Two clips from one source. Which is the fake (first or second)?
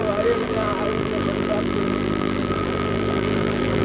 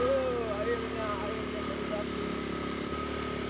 first